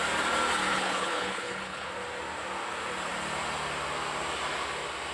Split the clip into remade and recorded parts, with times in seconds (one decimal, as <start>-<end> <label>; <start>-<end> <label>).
0.0-0.7 recorded; 0.7-1.9 remade; 1.9-5.1 recorded

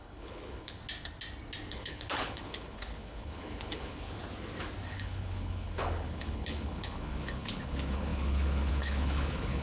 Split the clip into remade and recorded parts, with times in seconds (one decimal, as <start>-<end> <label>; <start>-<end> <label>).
0.0-0.8 remade; 0.8-1.7 recorded; 1.7-4.2 remade; 4.2-4.9 recorded; 4.9-9.6 remade

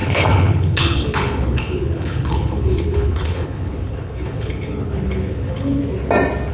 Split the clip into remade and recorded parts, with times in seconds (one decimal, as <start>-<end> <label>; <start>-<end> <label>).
0.0-5.8 remade; 5.8-6.5 recorded

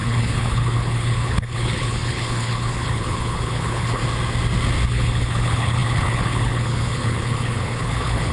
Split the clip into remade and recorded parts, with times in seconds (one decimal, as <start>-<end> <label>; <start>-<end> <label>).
0.0-4.0 remade; 4.0-4.9 recorded; 4.9-8.3 remade

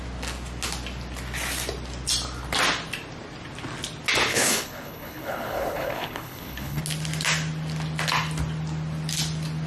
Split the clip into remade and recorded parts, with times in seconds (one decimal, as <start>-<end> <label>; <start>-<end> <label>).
0.0-4.3 recorded; 4.3-6.8 remade; 6.8-9.7 recorded

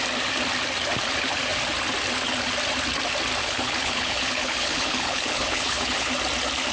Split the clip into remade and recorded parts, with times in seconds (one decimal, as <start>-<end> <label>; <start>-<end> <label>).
0.0-3.4 recorded; 3.4-6.1 remade; 6.1-6.7 recorded

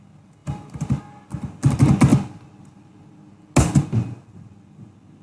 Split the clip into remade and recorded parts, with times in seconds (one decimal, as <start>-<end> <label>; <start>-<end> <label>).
0.0-5.2 recorded